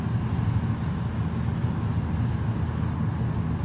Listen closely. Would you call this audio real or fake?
real